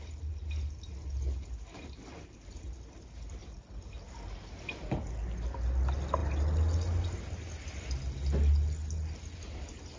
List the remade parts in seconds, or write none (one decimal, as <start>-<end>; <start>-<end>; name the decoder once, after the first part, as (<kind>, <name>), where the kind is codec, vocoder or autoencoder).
none